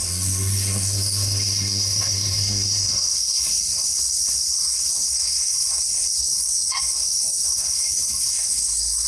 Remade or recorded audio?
remade